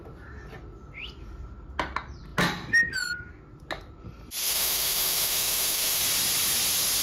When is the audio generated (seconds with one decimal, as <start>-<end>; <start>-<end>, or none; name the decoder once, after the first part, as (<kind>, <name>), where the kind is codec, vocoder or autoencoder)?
4.4-6.0 (autoencoder, DAC-VAE)